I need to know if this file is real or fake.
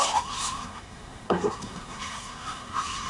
fake